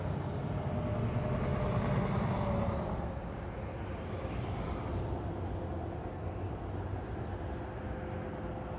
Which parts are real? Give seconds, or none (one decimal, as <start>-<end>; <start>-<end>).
0.0-8.8